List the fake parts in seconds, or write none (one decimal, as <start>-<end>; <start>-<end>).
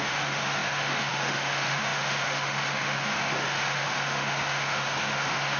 0.0-5.6